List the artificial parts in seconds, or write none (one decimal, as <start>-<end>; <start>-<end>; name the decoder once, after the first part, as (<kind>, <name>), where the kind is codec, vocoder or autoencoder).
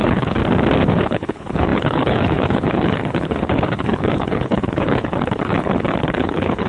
0.0-0.4 (codec, HILCodec); 0.9-6.7